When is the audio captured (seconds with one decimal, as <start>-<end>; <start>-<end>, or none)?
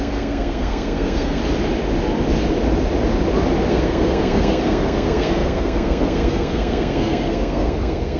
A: 1.4-3.7